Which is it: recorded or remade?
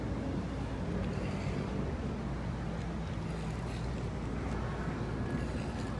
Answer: recorded